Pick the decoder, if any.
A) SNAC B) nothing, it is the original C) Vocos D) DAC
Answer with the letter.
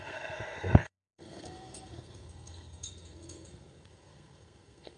A